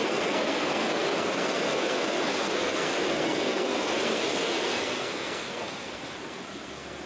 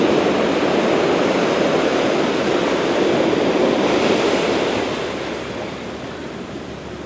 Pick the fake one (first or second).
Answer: first